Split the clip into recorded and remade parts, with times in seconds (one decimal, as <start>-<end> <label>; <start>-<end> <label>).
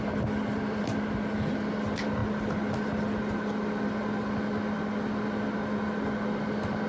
0.0-6.9 recorded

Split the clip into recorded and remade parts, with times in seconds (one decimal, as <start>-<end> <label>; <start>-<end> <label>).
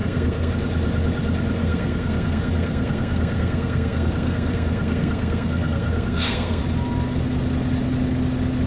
0.0-0.5 remade; 0.5-1.6 recorded; 1.6-6.6 remade; 6.6-8.7 recorded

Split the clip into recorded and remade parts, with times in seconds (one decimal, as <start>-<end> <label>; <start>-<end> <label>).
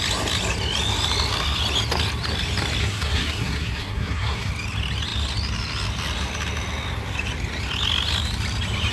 0.0-2.8 recorded; 2.8-4.5 remade; 4.5-8.9 recorded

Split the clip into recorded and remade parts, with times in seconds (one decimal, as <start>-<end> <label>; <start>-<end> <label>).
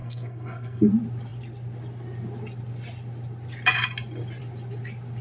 0.0-0.9 remade; 0.9-5.2 recorded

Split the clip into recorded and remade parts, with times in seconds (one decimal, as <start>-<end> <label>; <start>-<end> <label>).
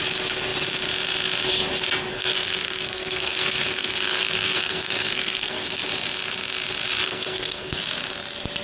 0.0-2.1 recorded; 2.1-5.8 remade; 5.8-7.0 recorded; 7.0-7.8 remade; 7.8-8.6 recorded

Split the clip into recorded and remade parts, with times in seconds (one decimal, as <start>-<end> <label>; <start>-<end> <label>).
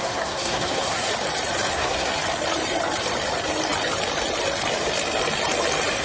0.0-1.1 remade; 1.1-1.7 recorded; 1.7-2.1 remade; 2.1-6.0 recorded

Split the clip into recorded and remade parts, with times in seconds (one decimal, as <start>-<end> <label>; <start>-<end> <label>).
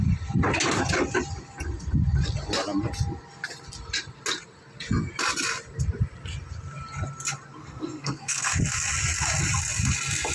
0.0-7.6 recorded; 7.6-8.6 remade; 8.6-10.3 recorded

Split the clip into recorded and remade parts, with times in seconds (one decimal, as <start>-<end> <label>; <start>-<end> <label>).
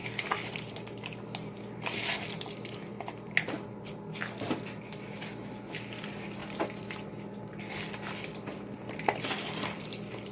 0.0-10.3 recorded